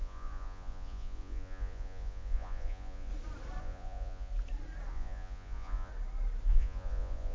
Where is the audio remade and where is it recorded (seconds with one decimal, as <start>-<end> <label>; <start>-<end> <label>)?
0.0-3.1 remade; 3.1-3.6 recorded; 3.6-4.3 remade; 4.3-4.9 recorded; 4.9-5.9 remade; 5.9-6.5 recorded; 6.5-7.3 remade